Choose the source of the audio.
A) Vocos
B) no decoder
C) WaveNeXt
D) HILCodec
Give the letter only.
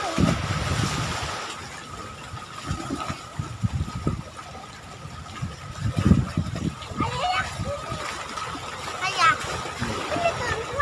B